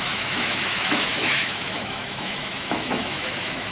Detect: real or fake fake